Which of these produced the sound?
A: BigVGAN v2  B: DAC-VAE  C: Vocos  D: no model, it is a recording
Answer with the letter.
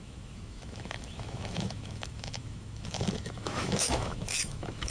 B